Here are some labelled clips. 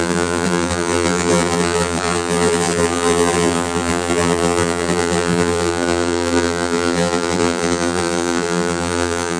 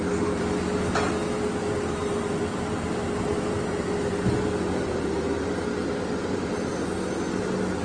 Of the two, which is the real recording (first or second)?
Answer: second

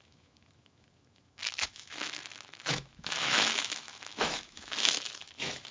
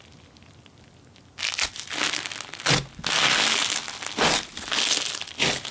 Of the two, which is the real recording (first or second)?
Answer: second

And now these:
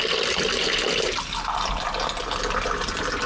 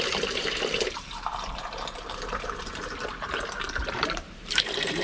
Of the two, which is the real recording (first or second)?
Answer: first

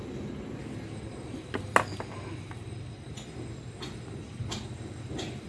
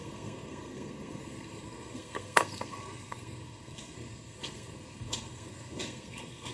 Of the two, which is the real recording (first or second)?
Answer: first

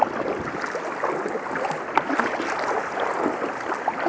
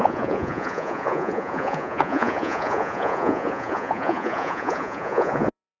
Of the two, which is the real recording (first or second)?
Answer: first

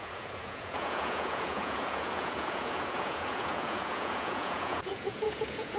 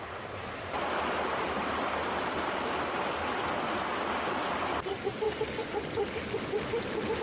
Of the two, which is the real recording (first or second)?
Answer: second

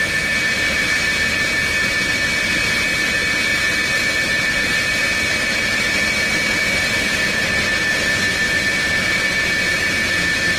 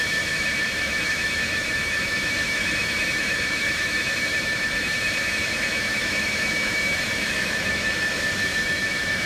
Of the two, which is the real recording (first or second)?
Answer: first